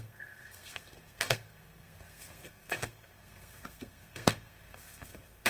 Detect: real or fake fake